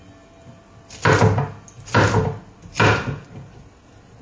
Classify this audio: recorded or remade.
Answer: recorded